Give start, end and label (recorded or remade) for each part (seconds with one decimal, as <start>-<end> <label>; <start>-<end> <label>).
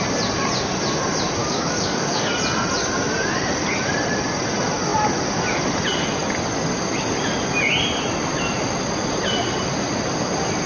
0.0-1.4 recorded; 1.4-2.3 remade; 2.3-10.7 recorded